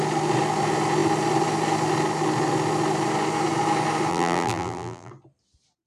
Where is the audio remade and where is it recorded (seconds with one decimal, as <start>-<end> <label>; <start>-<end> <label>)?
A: 0.0-4.1 recorded; 4.1-5.1 remade; 5.1-5.9 recorded